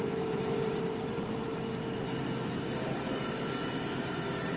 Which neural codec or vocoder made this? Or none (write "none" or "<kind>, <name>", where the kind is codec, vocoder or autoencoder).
vocoder, BigVGAN v2